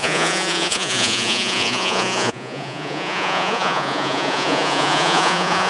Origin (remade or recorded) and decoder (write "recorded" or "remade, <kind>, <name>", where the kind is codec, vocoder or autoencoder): remade, vocoder, Vocos